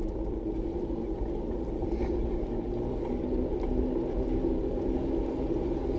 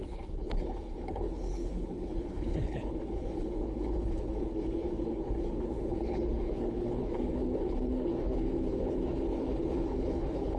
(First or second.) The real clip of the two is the first